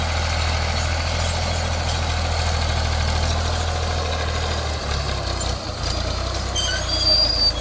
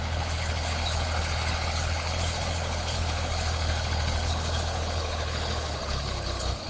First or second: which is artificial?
second